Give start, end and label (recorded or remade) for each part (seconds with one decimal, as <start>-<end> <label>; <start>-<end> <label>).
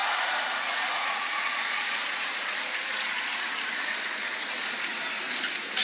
0.0-3.5 remade; 3.5-3.9 recorded; 3.9-5.0 remade; 5.0-5.8 recorded